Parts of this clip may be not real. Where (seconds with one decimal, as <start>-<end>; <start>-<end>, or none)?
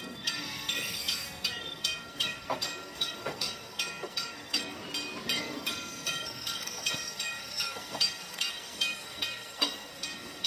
0.0-4.8; 5.4-10.5